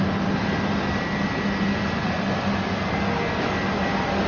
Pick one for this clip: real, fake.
real